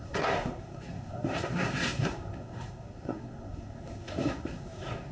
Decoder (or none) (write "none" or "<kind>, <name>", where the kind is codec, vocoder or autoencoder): codec, SNAC